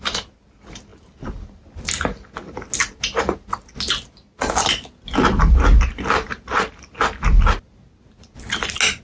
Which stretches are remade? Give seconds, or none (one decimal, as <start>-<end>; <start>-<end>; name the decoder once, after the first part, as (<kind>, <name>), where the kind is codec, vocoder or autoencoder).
none